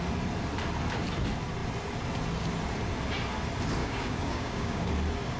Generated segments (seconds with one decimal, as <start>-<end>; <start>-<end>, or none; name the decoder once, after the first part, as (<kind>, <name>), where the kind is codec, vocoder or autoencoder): 3.8-4.9 (codec, DAC)